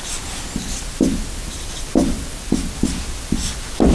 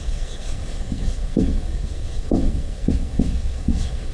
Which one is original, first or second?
first